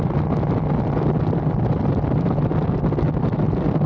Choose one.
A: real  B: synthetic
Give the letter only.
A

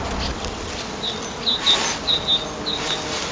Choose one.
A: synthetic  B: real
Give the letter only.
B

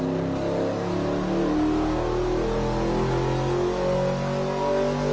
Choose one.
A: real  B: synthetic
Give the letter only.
A